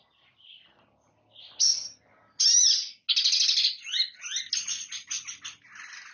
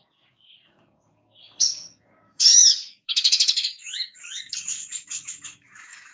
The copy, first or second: second